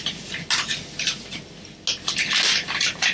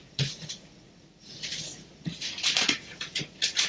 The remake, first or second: second